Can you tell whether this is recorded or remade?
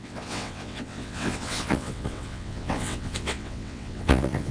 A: remade